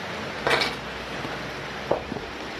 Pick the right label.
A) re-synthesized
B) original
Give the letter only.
B